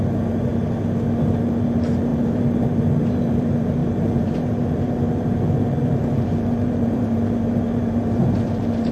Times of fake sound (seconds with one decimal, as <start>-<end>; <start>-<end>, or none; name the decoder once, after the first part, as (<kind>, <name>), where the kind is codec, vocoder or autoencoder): 0.0-0.5 (vocoder, BigVGAN v2); 1.4-8.9